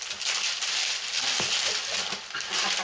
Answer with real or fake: real